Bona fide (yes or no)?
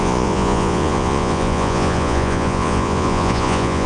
no